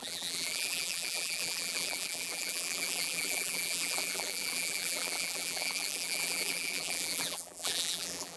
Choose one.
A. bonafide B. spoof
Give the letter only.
B